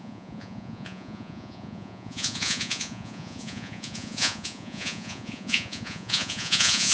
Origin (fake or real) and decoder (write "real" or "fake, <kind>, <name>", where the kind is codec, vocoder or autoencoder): fake, vocoder, Vocos